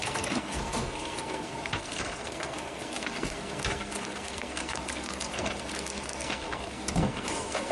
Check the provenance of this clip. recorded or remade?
remade